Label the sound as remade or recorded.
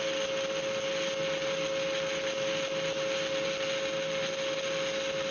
recorded